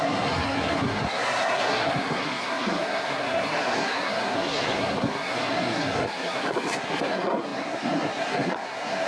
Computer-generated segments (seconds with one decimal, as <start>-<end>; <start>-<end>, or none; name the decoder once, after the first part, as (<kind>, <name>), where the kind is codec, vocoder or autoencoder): 0.0-9.1 (codec, SNAC)